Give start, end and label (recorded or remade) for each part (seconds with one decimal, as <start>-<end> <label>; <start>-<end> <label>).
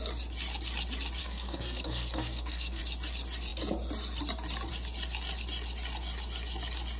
0.0-1.2 recorded; 1.2-2.8 remade; 2.8-7.0 recorded